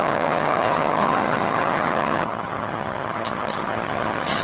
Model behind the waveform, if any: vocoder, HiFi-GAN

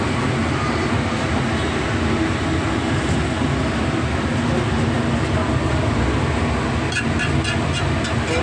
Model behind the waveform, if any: none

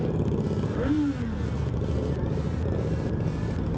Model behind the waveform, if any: none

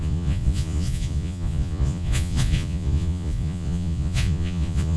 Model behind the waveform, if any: vocoder, Vocos